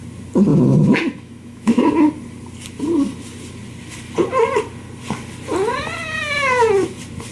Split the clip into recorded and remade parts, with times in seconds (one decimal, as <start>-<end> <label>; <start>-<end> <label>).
0.0-0.5 recorded; 0.5-1.8 remade; 1.8-7.3 recorded